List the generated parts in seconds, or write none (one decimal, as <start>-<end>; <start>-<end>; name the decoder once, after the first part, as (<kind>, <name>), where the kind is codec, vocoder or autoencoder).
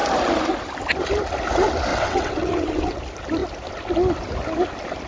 1.9-3.0 (vocoder, WaveNeXt)